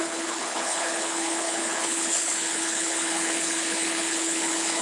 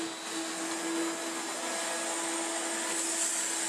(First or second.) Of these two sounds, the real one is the second